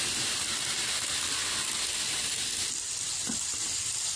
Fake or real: real